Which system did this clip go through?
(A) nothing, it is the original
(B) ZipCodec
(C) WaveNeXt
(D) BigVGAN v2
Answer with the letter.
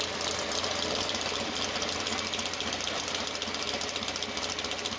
A